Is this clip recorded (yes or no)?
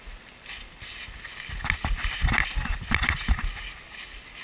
yes